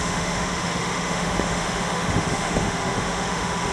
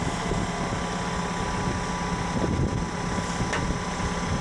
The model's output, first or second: first